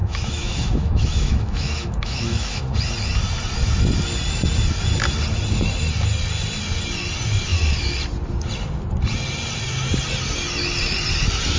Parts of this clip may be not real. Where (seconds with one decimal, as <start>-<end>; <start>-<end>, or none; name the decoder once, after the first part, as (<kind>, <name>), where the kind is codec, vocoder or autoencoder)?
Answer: 0.0-2.6 (autoencoder, DAC-VAE)